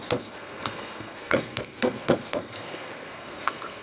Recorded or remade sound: remade